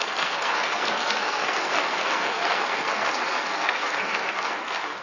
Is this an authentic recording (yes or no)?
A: no